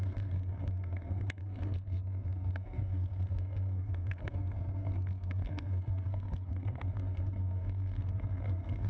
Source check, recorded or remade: remade